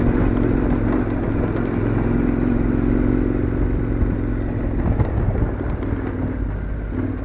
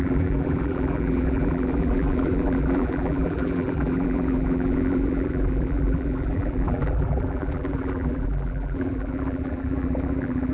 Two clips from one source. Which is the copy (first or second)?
second